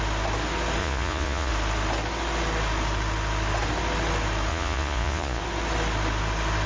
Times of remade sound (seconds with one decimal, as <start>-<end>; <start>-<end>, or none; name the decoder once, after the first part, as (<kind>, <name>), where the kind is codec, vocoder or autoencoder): 0.8-1.5 (vocoder, Vocos); 4.5-5.4